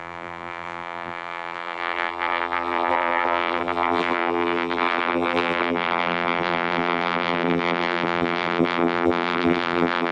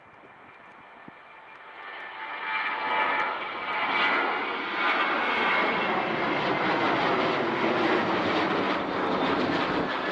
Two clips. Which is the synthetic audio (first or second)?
first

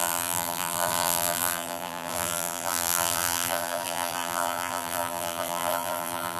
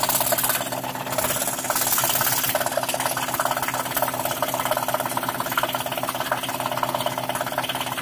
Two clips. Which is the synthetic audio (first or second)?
first